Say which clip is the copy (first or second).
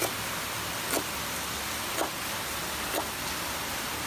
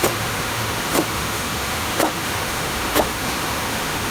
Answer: second